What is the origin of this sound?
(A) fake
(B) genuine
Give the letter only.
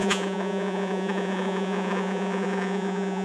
A